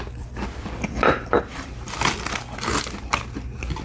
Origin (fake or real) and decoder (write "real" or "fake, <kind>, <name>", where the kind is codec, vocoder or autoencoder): real